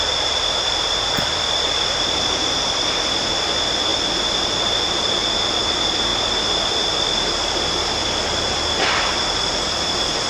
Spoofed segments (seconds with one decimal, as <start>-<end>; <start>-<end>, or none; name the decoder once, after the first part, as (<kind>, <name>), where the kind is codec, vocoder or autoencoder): 0.0-3.9 (vocoder, BigVGAN v2); 5.6-6.1; 8.4-10.3